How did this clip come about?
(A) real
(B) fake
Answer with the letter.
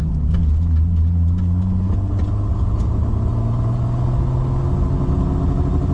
A